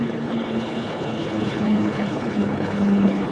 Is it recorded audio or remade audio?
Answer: remade